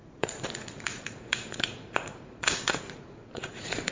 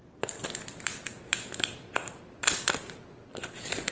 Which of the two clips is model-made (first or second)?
first